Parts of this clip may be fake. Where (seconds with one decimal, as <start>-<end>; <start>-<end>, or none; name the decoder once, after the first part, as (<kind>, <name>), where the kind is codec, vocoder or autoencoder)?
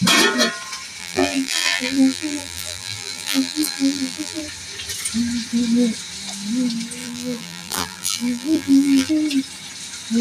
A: 1.0-4.4 (vocoder, BigVGAN v2); 7.0-9.1